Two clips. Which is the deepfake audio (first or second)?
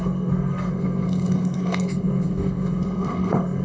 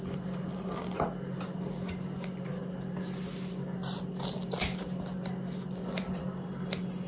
first